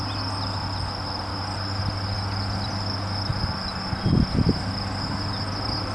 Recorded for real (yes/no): yes